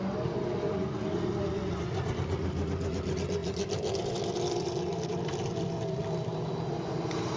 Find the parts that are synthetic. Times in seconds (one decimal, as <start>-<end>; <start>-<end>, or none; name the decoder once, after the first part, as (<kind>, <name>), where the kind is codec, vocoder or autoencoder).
3.4-6.0 (vocoder, BigVGAN v2)